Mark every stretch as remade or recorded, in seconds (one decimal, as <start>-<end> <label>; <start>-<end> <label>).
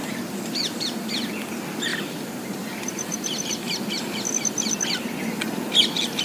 0.0-1.9 recorded; 1.9-4.8 remade; 4.8-6.2 recorded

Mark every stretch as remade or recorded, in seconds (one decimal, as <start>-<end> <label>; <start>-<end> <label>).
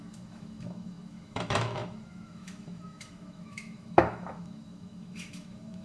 0.0-5.8 remade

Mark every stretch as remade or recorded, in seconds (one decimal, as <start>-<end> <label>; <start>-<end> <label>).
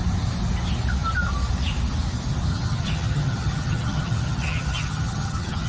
0.0-2.5 recorded; 2.5-5.7 remade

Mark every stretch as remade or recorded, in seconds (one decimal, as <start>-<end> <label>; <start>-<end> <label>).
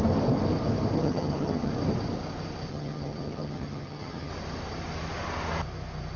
0.0-1.0 recorded; 1.0-1.7 remade; 1.7-2.7 recorded; 2.7-4.3 remade; 4.3-6.2 recorded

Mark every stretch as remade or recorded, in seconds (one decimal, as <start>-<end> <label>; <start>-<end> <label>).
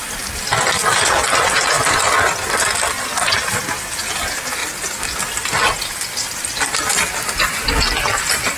0.0-8.6 recorded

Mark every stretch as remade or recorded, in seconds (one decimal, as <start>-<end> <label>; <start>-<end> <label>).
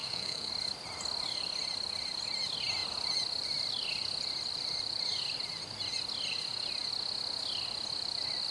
0.0-0.5 remade; 0.5-8.5 recorded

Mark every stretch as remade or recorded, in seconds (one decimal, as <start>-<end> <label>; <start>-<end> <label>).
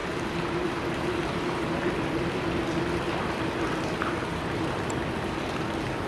0.0-3.1 remade; 3.1-6.1 recorded